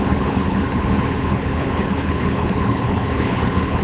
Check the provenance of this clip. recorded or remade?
remade